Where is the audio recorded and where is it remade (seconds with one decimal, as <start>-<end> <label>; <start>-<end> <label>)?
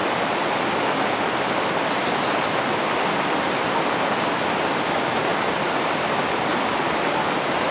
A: 0.0-5.3 recorded; 5.3-6.1 remade; 6.1-7.7 recorded